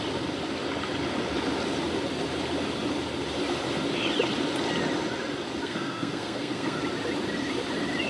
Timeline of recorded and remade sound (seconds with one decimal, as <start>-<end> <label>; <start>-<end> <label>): 0.0-5.6 recorded; 5.6-6.8 remade; 6.8-8.1 recorded